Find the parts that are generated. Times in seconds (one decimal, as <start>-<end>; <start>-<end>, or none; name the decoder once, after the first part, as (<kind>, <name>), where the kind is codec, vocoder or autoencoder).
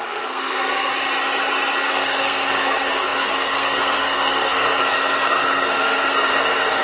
0.0-0.9 (codec, SNAC); 1.9-6.8